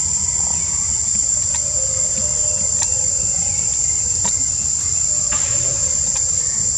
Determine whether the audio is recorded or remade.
recorded